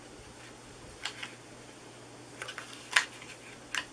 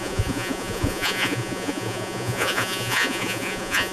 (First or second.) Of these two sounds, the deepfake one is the second